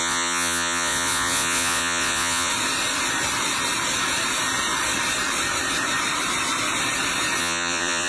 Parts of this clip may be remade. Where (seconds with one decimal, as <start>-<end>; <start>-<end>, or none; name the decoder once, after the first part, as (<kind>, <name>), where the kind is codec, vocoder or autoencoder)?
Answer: 0.0-2.5 (vocoder, Vocos); 7.4-8.1

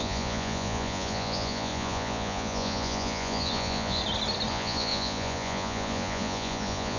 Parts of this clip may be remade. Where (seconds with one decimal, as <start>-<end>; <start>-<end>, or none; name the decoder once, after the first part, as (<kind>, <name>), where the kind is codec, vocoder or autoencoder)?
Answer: 0.0-4.0 (vocoder, Vocos); 4.5-7.0

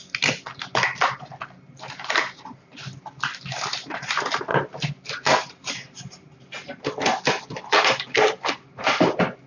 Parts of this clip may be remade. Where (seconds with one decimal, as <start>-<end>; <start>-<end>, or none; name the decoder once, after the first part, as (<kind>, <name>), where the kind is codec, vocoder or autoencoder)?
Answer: none